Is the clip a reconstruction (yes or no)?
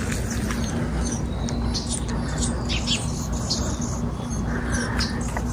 no